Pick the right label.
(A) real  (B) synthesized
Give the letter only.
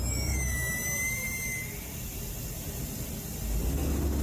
A